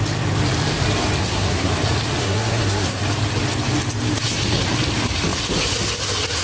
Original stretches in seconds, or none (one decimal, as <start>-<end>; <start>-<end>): 0.0-1.2; 1.7-2.2; 3.0-6.4